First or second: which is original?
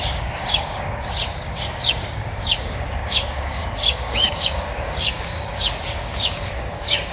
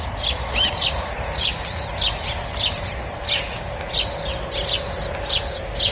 second